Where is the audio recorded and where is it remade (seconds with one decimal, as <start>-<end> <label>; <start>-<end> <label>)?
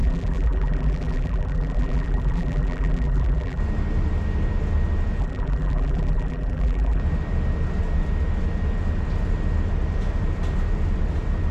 0.0-3.6 remade; 3.6-5.2 recorded; 5.2-7.0 remade; 7.0-11.5 recorded